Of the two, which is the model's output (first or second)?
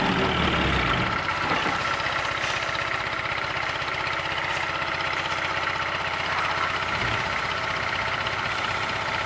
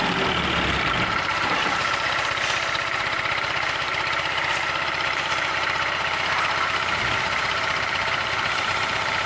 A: second